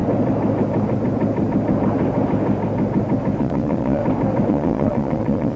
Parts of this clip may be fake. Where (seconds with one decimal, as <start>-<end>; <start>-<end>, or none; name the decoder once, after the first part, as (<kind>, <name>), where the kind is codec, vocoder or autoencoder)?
3.4-4.0 (vocoder, Vocos); 4.5-5.6